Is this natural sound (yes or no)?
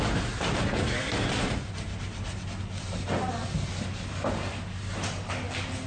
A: yes